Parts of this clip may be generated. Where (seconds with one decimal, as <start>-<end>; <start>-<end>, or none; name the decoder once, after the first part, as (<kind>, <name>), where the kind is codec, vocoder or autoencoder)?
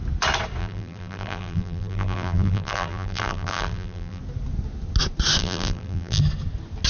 0.6-4.2 (vocoder, BigVGAN v2); 5.4-6.2